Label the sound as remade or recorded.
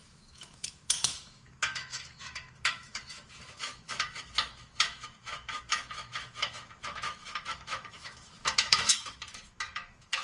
remade